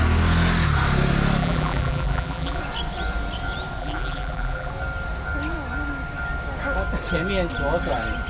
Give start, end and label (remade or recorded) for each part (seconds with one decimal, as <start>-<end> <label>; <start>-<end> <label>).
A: 0.0-1.4 recorded; 1.4-2.6 remade; 2.6-3.8 recorded; 3.8-4.7 remade; 4.7-8.3 recorded